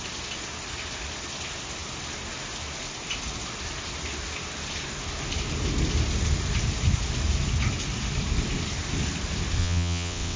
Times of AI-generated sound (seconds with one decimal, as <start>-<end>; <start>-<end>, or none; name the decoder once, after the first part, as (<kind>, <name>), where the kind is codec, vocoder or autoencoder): 9.6-10.4 (vocoder, WaveNeXt)